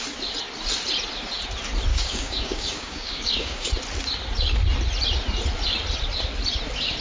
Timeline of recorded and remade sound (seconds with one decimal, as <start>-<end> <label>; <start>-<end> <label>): 0.0-1.9 recorded; 1.9-3.7 remade; 3.7-7.0 recorded